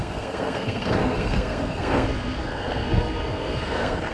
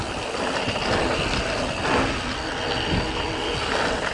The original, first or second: second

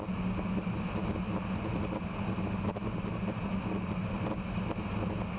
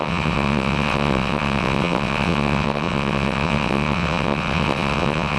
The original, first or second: first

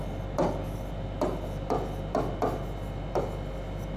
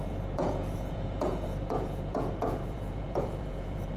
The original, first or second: first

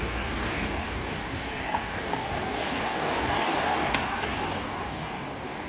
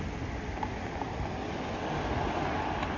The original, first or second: second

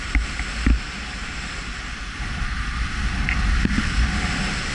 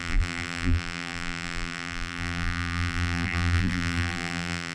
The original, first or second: first